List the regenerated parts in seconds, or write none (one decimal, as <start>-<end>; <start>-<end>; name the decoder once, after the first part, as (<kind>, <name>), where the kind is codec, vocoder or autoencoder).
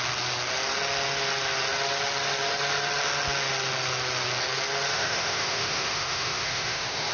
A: 4.9-7.1 (autoencoder, DAC-VAE)